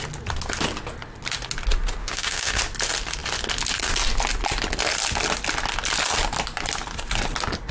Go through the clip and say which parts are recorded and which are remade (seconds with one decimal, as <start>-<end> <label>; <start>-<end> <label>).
0.0-2.0 recorded; 2.0-2.6 remade; 2.6-7.7 recorded